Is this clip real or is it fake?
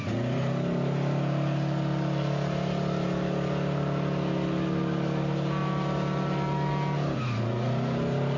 real